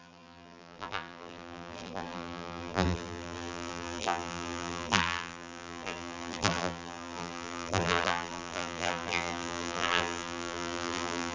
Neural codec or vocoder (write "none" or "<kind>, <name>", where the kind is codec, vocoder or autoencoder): vocoder, BigVGAN v2